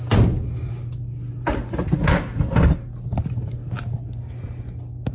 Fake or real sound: real